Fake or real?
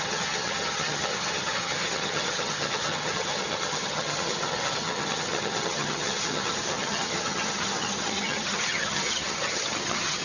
fake